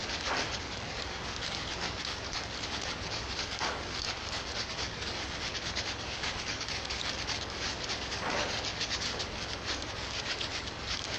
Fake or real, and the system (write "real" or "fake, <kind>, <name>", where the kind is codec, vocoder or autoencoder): fake, codec, DAC